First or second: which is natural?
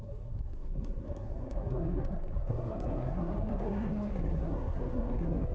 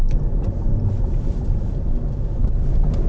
second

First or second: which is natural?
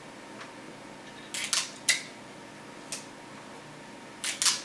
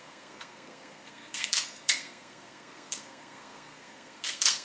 first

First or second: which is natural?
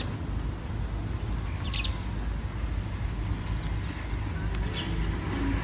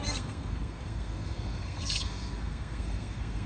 first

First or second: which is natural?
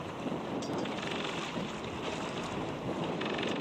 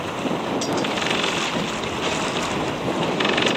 second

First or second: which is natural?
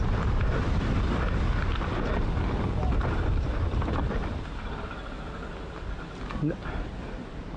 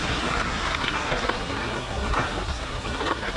first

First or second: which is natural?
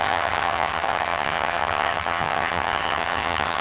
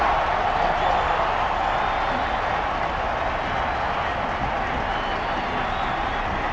second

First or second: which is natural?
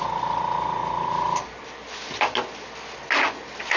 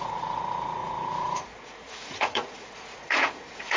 first